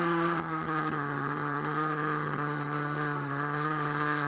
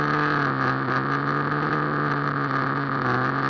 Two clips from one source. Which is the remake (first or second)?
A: first